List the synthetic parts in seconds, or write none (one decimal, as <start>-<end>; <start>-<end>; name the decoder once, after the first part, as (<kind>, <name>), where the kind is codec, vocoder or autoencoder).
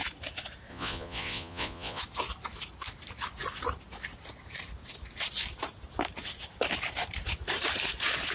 0.7-2.0 (vocoder, Vocos)